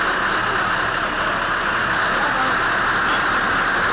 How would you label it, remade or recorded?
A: recorded